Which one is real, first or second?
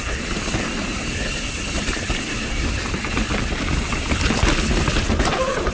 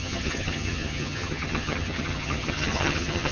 first